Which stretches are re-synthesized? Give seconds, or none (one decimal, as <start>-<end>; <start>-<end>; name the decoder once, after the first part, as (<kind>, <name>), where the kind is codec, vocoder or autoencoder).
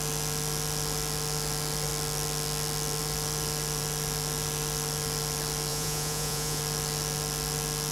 5.7-6.6 (vocoder, Vocos)